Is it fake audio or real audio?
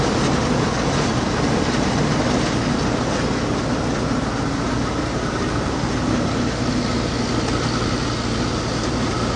real